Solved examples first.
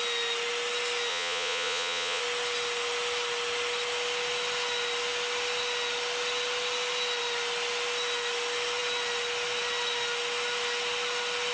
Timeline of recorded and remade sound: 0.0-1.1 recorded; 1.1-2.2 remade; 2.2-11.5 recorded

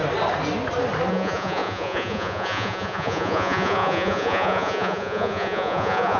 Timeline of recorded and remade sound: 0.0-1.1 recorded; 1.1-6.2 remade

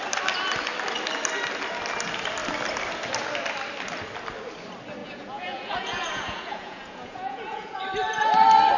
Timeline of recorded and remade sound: 0.0-5.0 recorded; 5.0-7.8 remade; 7.8-8.8 recorded